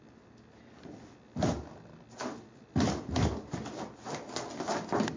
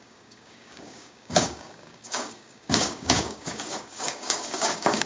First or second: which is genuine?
first